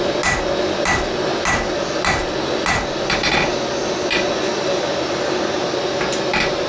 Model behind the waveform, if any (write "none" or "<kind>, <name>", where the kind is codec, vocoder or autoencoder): none